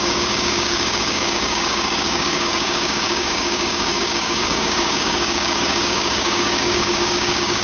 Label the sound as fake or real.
fake